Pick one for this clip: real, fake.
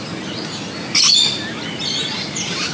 real